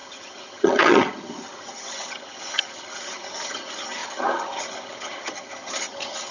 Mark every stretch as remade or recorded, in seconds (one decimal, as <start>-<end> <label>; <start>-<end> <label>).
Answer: 0.0-6.3 remade